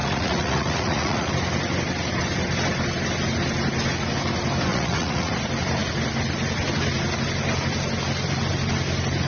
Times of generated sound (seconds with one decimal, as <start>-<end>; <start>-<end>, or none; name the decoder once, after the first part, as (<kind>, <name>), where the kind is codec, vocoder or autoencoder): 0.0-1.3 (vocoder, Vocos); 4.7-5.3